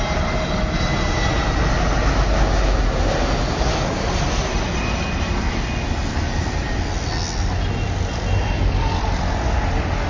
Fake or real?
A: real